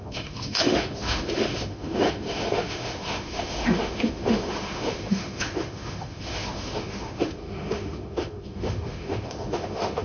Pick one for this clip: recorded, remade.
remade